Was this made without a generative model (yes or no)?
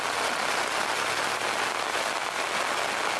yes